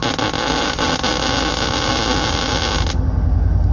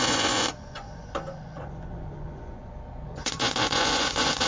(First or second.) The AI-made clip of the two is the second